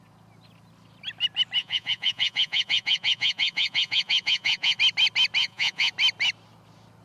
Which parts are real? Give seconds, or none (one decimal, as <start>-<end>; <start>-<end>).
0.0-1.6; 4.8-5.4; 5.9-7.0